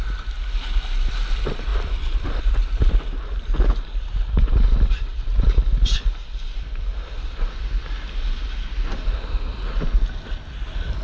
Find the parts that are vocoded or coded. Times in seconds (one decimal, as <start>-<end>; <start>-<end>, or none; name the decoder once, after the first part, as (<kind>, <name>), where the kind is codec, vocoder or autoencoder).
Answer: 1.7-2.4 (vocoder, BigVGAN v2)